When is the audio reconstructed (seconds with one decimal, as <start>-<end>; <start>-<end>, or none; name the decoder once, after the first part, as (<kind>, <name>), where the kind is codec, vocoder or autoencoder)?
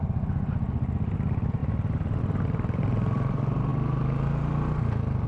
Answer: none